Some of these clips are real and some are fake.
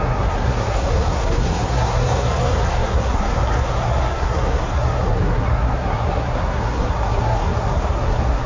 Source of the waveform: fake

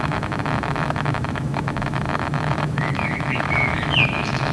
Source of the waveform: fake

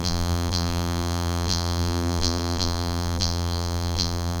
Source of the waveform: fake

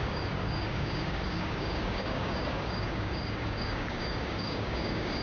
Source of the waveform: fake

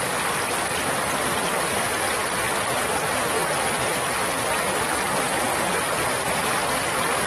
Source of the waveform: real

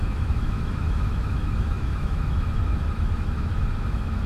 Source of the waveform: fake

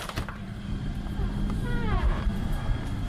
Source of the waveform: fake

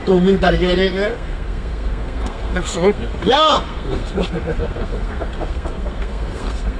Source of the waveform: fake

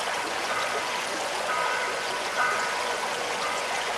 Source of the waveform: fake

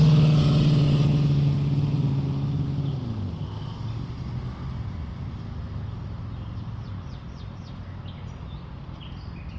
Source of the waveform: real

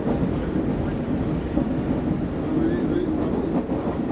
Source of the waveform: real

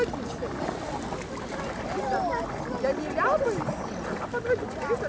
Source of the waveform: real